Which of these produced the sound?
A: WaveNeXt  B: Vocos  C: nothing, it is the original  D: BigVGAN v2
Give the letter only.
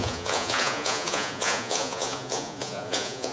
B